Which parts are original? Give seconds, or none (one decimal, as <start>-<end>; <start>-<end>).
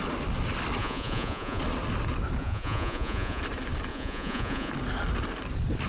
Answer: 0.0-0.8; 1.6-2.4; 3.4-3.9; 4.7-5.9